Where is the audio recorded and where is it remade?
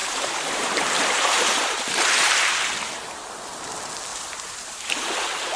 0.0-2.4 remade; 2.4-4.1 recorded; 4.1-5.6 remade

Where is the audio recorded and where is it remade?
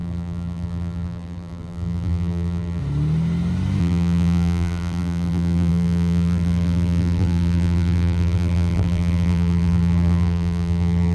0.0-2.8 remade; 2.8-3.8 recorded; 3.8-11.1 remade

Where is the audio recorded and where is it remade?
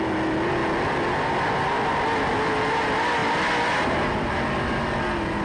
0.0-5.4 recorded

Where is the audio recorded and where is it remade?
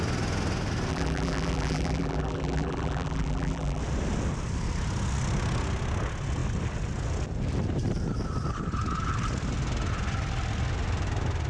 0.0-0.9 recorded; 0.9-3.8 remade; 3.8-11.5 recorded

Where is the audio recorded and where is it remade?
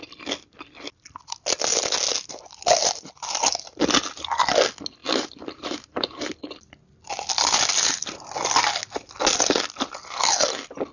0.0-5.0 recorded; 5.0-6.3 remade; 6.3-10.9 recorded